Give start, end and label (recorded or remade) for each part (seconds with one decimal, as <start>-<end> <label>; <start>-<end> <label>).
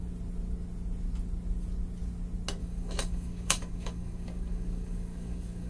0.0-2.6 recorded; 2.6-5.7 remade